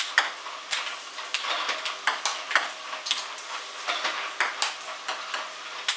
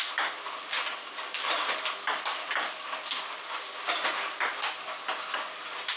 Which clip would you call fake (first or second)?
second